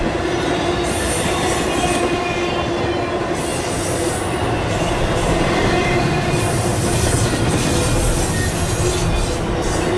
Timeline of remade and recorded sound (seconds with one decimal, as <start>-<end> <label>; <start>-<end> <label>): 0.0-5.2 recorded; 5.2-7.1 remade; 7.1-10.0 recorded